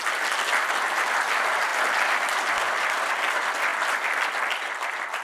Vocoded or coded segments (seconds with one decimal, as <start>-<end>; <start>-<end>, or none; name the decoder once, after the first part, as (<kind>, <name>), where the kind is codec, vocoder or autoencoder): none